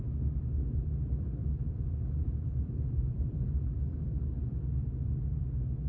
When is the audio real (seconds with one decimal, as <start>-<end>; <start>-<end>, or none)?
0.0-1.4; 4.9-5.9